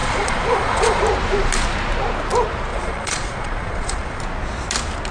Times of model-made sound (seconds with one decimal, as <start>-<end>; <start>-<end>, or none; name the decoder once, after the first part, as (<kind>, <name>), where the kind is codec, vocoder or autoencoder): 0.0-1.0 (vocoder, Vocos); 2.7-4.2